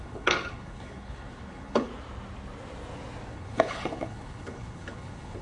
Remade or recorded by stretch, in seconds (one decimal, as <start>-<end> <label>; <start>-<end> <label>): 0.0-1.9 remade; 1.9-3.3 recorded; 3.3-5.4 remade